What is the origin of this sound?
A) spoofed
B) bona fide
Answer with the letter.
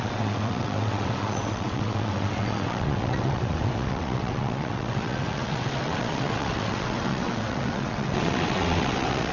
A